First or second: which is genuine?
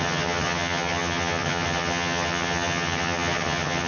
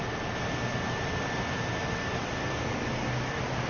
second